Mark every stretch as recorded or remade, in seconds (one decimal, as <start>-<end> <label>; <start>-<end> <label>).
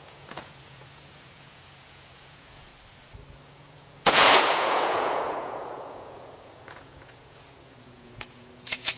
0.0-2.7 remade; 2.7-3.3 recorded; 3.3-9.0 remade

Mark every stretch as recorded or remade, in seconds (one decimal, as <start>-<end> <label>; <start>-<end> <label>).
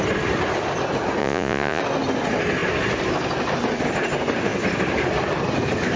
0.0-1.2 recorded; 1.2-1.8 remade; 1.8-6.0 recorded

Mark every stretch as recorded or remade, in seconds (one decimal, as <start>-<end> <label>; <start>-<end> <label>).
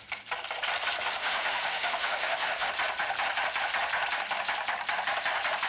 0.0-1.2 recorded; 1.2-2.7 remade; 2.7-5.7 recorded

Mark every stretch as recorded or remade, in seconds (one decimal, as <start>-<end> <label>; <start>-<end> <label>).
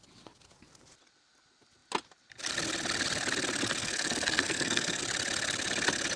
0.0-3.8 recorded; 3.8-5.0 remade; 5.0-6.2 recorded